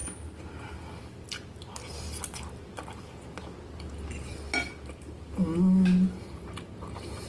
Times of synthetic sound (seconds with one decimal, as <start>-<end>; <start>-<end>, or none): none